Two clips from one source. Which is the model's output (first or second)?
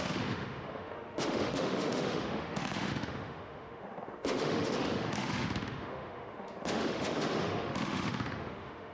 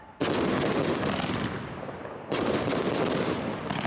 first